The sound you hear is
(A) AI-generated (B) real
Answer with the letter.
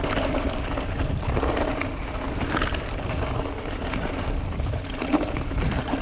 B